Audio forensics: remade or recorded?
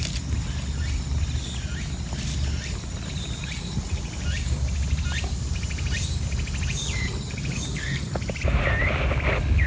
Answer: recorded